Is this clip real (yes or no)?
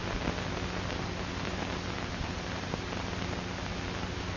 yes